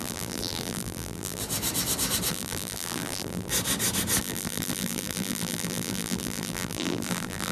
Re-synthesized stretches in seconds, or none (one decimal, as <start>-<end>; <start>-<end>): 0.0-1.4; 2.3-3.5; 4.2-7.5